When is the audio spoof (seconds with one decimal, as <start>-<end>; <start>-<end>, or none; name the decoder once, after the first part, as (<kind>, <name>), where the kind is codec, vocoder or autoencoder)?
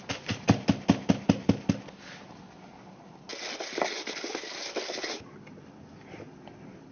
none